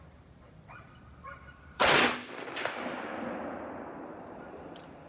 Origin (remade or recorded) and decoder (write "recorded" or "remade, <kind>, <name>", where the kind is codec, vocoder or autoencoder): remade, vocoder, BigVGAN v2